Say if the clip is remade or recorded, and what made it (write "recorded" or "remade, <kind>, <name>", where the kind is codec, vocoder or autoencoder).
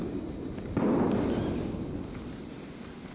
recorded